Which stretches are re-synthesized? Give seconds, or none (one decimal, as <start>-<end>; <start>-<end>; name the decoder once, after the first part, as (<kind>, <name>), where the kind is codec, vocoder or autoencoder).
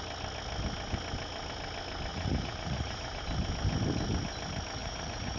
2.1-3.2 (vocoder, Vocos); 4.8-5.4